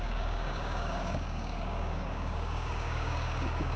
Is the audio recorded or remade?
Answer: remade